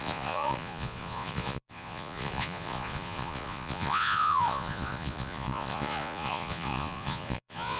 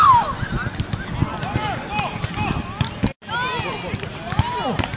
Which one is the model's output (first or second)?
first